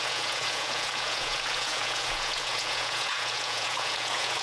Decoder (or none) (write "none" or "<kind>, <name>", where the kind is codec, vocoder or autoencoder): vocoder, Vocos